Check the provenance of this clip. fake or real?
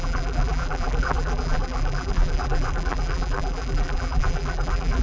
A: fake